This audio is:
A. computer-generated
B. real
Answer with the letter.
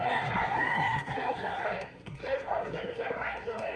A